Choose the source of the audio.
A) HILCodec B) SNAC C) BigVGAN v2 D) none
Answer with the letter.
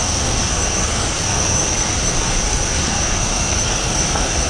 B